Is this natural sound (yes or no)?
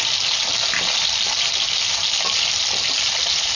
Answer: yes